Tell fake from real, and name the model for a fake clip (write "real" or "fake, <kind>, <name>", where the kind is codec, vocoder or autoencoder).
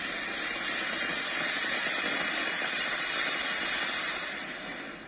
real